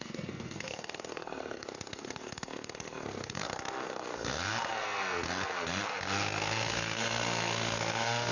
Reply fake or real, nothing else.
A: fake